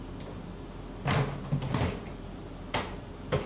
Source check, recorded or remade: recorded